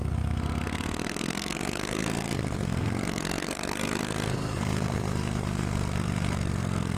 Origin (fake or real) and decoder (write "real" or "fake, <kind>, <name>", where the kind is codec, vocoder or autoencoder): fake, codec, SNAC